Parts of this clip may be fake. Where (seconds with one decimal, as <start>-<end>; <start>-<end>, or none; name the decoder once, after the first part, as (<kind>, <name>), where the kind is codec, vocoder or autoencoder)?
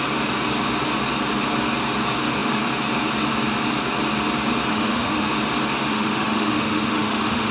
4.7-5.3 (autoencoder, DAC-VAE); 5.9-7.5